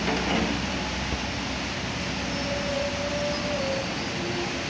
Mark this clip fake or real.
real